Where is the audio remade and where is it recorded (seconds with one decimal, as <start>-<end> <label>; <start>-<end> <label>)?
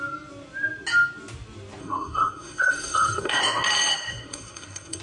0.0-1.8 recorded; 1.8-3.4 remade; 3.4-3.9 recorded; 3.9-5.0 remade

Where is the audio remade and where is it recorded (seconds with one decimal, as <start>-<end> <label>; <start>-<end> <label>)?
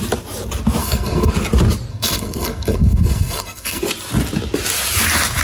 0.0-0.8 recorded; 0.8-1.3 remade; 1.3-1.9 recorded; 1.9-3.8 remade; 3.8-5.4 recorded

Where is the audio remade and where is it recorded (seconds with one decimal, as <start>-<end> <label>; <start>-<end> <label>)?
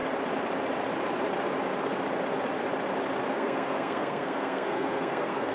0.0-3.3 recorded; 3.3-5.5 remade